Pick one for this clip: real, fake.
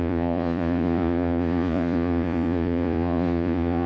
fake